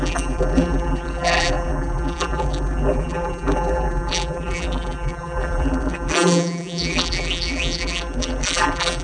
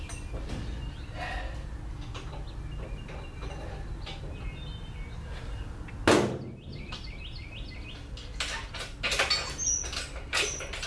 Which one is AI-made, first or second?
first